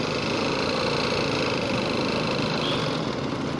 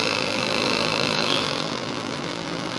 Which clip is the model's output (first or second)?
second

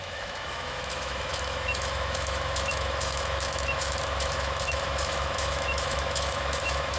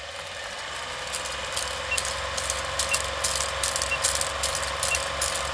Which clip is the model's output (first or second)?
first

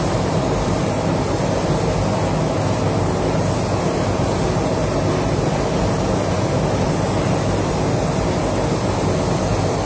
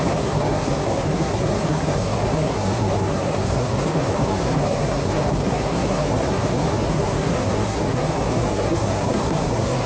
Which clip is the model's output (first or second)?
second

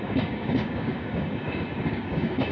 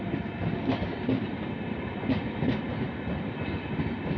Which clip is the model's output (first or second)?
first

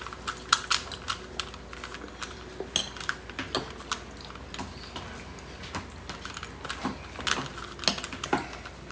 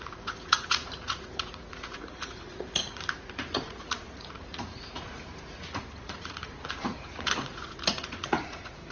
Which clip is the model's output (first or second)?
second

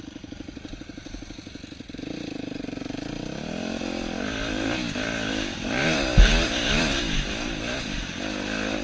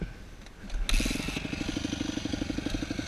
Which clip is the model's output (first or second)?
first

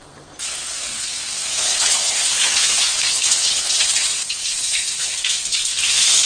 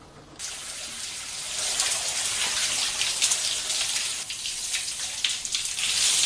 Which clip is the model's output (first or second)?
first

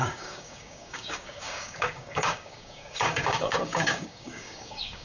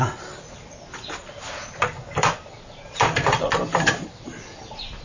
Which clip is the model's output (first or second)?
first